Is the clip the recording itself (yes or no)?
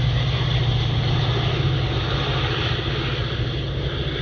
yes